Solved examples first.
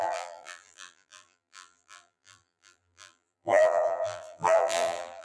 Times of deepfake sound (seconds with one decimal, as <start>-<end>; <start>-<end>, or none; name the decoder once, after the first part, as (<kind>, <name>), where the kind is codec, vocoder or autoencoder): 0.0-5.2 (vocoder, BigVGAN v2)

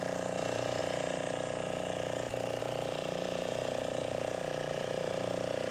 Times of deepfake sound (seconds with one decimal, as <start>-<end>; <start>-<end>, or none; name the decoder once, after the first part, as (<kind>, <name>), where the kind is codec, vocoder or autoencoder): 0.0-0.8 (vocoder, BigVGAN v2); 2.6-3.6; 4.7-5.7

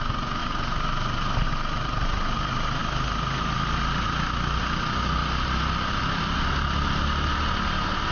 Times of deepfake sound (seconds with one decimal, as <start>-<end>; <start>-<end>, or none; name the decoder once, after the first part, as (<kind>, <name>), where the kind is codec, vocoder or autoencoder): none

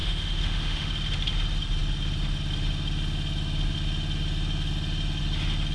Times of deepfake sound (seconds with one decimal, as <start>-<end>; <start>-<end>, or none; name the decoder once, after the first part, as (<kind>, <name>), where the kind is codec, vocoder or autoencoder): 0.0-0.9 (autoencoder, DAC-VAE)